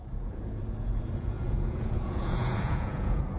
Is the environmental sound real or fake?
fake